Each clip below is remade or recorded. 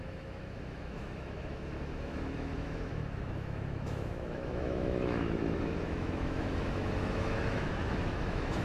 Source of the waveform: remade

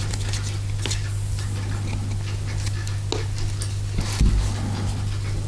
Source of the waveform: recorded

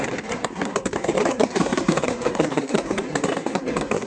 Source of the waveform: remade